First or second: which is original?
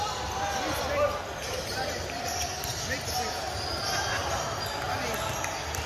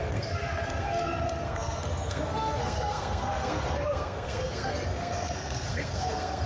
first